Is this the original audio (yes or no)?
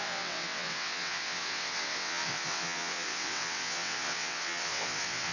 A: no